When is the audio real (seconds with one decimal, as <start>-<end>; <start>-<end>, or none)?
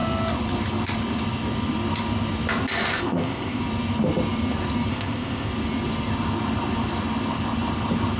0.0-2.9; 3.6-4.9; 5.5-8.2